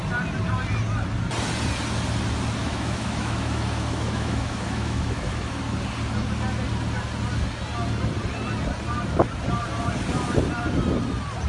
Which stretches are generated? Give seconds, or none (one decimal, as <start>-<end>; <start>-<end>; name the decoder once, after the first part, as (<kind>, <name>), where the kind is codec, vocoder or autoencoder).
2.6-5.6 (autoencoder, DAC-VAE)